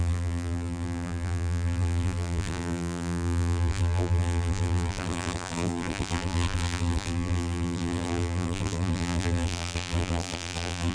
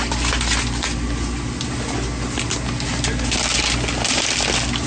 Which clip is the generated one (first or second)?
first